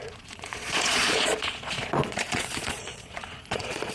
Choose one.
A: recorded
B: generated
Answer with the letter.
B